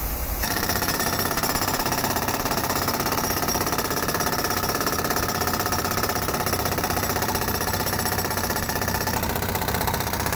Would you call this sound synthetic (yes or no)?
yes